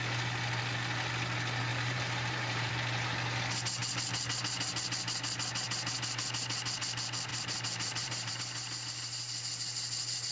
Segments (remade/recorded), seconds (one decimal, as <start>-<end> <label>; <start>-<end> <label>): 0.0-1.7 recorded; 1.7-2.7 remade; 2.7-7.3 recorded; 7.3-8.3 remade; 8.3-10.3 recorded